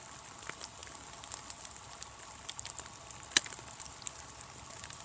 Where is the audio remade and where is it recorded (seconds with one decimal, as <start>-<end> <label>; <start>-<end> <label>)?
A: 0.0-5.0 recorded